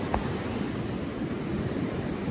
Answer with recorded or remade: recorded